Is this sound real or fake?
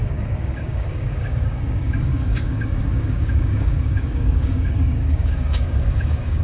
fake